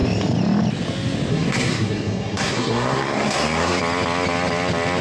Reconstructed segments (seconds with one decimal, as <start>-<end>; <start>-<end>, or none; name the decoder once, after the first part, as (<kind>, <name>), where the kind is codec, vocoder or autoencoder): 1.3-3.8 (codec, SNAC)